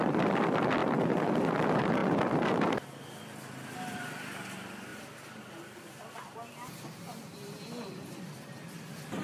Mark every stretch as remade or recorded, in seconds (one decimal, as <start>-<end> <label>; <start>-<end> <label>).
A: 0.0-9.2 recorded